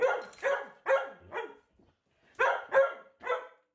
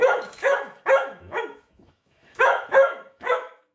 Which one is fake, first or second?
second